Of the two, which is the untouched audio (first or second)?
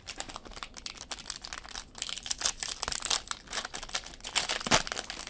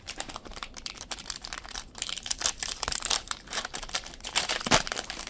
first